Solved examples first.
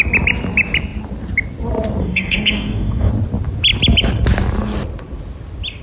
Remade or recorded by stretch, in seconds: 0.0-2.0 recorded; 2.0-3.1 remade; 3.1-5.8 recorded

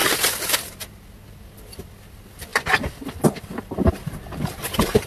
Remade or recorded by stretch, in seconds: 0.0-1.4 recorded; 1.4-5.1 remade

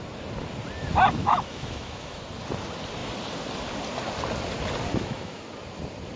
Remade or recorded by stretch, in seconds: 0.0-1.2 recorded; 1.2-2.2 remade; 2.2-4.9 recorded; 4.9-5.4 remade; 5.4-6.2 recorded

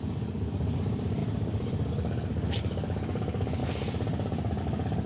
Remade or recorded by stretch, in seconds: 0.0-3.6 remade; 3.6-4.6 recorded; 4.6-5.1 remade

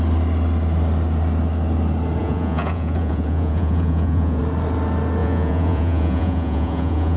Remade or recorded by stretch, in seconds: 0.0-2.2 recorded; 2.2-4.4 remade; 4.4-5.2 recorded; 5.2-7.2 remade

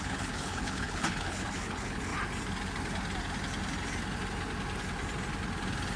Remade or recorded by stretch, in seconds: 0.0-2.1 remade; 2.1-6.0 recorded